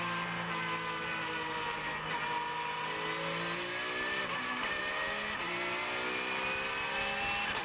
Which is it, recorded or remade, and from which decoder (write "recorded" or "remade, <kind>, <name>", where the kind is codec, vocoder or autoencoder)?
recorded